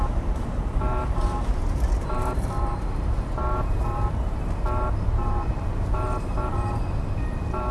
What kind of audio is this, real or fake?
fake